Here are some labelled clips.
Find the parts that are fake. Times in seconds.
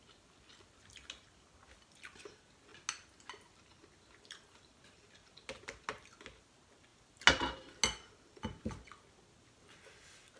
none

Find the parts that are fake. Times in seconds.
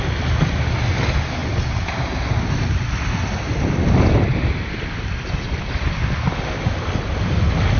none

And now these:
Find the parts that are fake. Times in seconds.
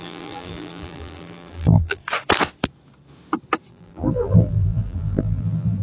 0.0-2.0 (vocoder, BigVGAN v2); 3.7-5.8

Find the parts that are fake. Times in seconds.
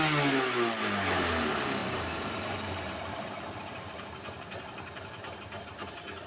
1.8-5.6 (vocoder, BigVGAN v2)